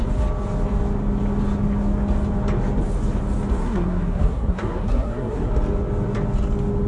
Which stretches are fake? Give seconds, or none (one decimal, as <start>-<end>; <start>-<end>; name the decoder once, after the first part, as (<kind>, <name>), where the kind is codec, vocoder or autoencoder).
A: 3.6-5.5 (codec, SNAC)